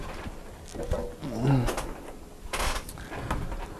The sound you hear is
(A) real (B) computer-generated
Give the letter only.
A